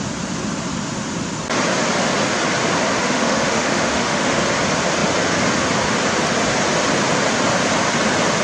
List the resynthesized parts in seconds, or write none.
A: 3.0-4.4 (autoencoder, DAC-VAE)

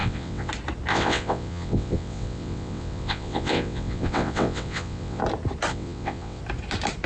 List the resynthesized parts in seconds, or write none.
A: 0.0-0.5 (vocoder, WaveNeXt); 0.9-5.2; 5.7-6.4

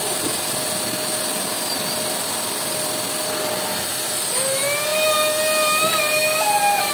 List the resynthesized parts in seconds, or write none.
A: none

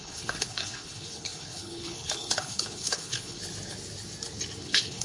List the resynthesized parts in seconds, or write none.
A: 0.0-3.4 (codec, HILCodec); 4.6-5.0

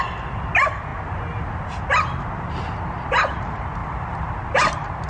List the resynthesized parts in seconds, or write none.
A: none

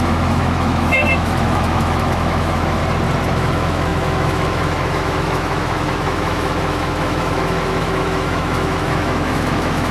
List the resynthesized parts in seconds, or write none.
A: 0.0-2.8 (autoencoder, DAC-VAE); 3.3-9.9

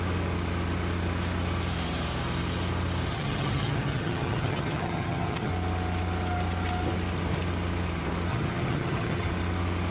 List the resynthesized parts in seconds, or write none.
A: 3.1-5.5 (vocoder, HiFi-GAN); 8.3-9.3